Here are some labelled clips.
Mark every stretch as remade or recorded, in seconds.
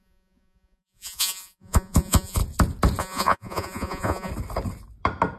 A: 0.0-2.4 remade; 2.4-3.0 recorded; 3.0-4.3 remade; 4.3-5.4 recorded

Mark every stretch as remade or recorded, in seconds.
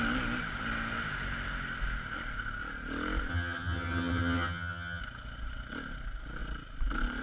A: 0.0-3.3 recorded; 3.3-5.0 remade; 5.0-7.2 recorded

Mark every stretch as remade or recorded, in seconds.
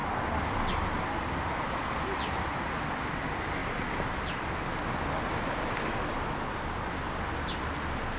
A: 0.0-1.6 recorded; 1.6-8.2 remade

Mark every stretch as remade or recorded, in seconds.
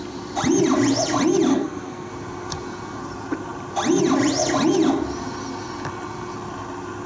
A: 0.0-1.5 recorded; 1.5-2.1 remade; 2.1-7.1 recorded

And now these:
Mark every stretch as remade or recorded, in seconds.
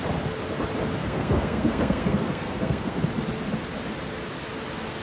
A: 0.0-1.0 recorded; 1.0-3.0 remade; 3.0-5.0 recorded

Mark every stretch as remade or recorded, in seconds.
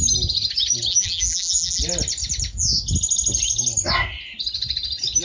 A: 0.0-0.9 recorded; 0.9-1.8 remade; 1.8-5.2 recorded